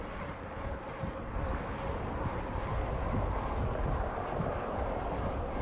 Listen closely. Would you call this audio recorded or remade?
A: recorded